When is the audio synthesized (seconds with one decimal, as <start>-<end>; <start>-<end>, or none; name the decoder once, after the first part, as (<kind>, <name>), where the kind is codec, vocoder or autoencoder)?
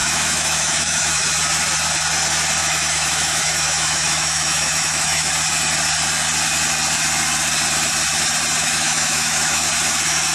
0.0-1.3 (autoencoder, DAC-VAE); 2.6-5.3; 8.6-9.7